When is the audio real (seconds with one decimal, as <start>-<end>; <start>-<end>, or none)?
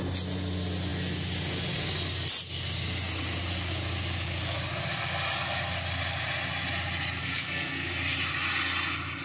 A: 0.0-7.2; 7.9-9.2